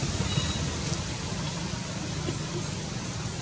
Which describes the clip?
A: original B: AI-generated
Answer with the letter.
A